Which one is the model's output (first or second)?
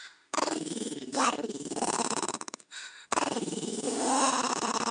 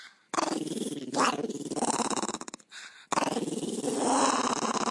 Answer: first